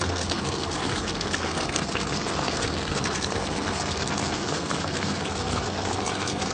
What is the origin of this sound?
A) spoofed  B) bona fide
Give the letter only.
A